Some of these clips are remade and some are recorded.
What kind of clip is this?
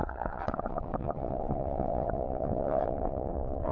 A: remade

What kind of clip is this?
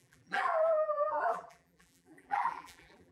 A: remade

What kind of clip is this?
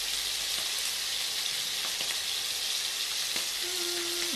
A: recorded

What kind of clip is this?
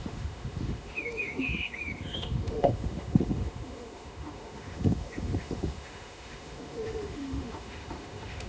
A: remade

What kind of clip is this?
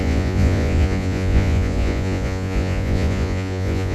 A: remade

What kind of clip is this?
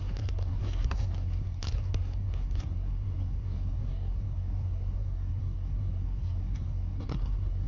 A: remade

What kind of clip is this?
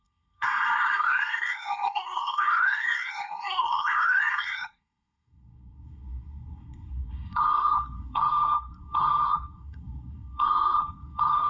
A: remade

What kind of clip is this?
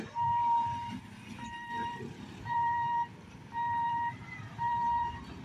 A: remade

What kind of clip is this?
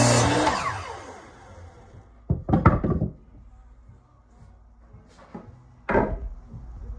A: recorded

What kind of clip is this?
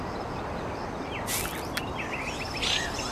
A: recorded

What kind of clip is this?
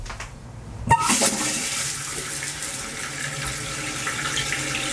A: recorded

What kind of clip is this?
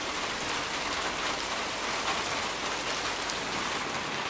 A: recorded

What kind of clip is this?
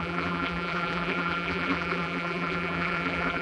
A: remade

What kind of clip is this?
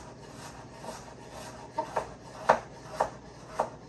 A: recorded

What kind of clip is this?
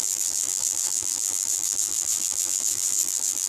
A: remade